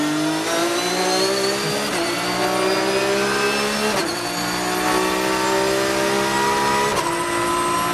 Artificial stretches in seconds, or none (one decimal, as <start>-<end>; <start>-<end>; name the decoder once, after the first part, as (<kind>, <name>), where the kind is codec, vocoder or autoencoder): none